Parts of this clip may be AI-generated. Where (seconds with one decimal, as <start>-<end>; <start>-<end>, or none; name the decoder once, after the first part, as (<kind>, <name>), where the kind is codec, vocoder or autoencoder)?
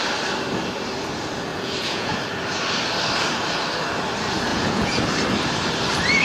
1.5-2.1 (vocoder, Vocos); 4.5-5.0